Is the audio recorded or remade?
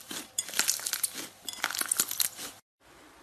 recorded